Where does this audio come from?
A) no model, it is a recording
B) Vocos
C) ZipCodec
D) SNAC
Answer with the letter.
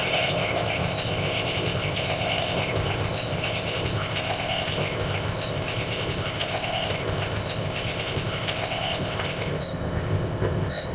C